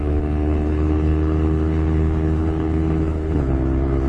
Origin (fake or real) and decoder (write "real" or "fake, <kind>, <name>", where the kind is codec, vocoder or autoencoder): fake, codec, HILCodec